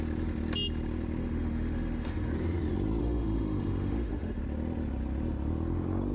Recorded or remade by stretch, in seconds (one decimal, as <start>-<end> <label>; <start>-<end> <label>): 0.0-1.2 recorded; 1.2-2.3 remade; 2.3-3.0 recorded; 3.0-4.4 remade; 4.4-6.1 recorded